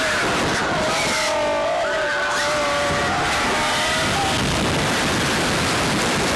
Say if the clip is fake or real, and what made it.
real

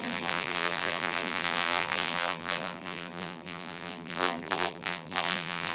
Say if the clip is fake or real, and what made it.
fake, vocoder, BigVGAN v2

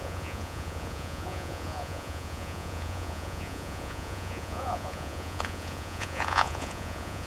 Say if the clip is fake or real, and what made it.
fake, vocoder, Vocos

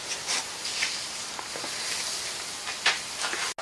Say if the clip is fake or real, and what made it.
real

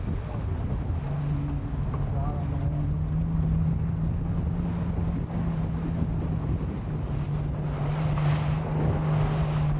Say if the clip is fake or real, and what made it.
real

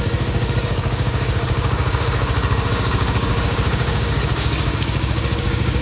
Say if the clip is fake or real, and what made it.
fake, codec, DAC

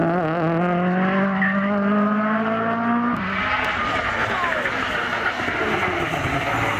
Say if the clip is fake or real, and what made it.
real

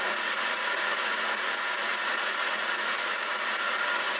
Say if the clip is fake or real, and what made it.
fake, vocoder, Vocos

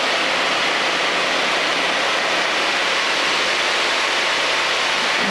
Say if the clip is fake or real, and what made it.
real